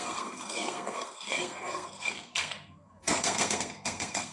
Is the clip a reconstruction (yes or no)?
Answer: yes